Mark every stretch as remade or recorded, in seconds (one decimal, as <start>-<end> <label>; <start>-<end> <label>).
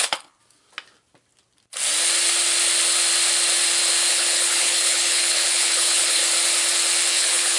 0.0-0.4 remade; 0.4-4.1 recorded; 4.1-6.2 remade; 6.2-7.1 recorded; 7.1-7.6 remade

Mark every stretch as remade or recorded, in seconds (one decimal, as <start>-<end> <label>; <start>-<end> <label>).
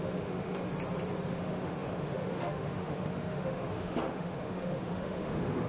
0.0-0.7 remade; 0.7-1.3 recorded; 1.3-5.7 remade